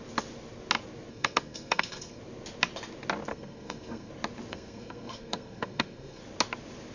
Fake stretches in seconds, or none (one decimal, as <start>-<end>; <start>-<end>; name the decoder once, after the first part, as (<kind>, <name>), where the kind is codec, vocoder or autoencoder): 1.1-2.2 (codec, SNAC); 3.3-4.1; 4.5-6.2